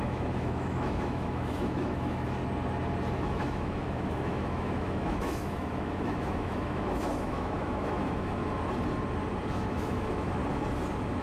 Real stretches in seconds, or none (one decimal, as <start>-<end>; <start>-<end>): 2.4-3.1; 8.4-9.5; 10.4-11.2